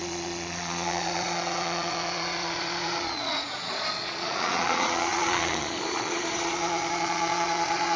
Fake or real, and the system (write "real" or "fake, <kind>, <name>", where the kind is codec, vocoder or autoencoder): fake, vocoder, Vocos